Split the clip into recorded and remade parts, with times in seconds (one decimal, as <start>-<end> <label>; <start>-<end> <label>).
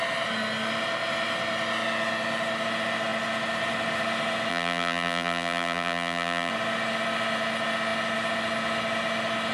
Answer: 0.0-4.5 recorded; 4.5-6.5 remade; 6.5-9.5 recorded